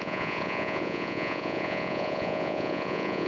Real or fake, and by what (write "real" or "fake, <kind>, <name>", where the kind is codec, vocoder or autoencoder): fake, vocoder, Vocos